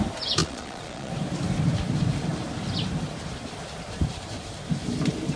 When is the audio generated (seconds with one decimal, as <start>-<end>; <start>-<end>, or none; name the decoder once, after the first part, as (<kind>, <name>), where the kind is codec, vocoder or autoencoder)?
0.4-1.1 (vocoder, Vocos)